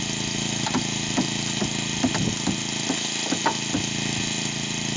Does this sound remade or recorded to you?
recorded